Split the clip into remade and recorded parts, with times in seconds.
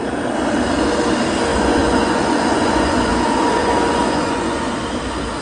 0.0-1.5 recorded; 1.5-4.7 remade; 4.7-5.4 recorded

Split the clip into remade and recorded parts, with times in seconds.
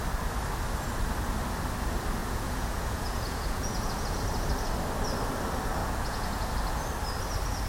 0.0-2.2 recorded; 2.2-4.2 remade; 4.2-5.8 recorded; 5.8-6.5 remade; 6.5-7.7 recorded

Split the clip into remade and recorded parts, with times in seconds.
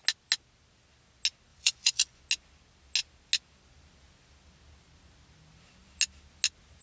0.0-1.5 recorded; 1.5-2.2 remade; 2.2-6.8 recorded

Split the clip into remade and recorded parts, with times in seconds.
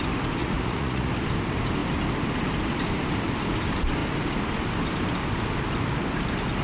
0.0-0.4 recorded; 0.4-1.1 remade; 1.1-6.6 recorded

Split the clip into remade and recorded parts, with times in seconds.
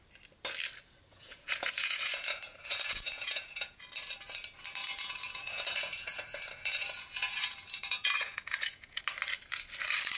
0.0-1.1 recorded; 1.1-3.8 remade; 3.8-4.8 recorded; 4.8-9.0 remade; 9.0-10.2 recorded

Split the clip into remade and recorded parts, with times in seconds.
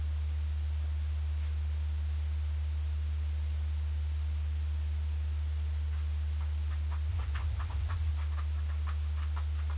0.0-7.1 recorded; 7.1-8.1 remade; 8.1-9.8 recorded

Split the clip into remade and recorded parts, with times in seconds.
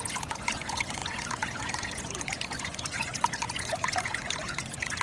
0.0-5.0 remade